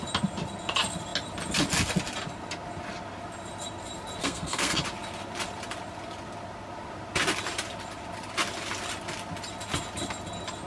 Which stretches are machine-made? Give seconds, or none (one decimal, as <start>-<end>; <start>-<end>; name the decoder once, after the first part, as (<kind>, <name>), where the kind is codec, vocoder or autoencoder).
4.2-4.8 (codec, SNAC)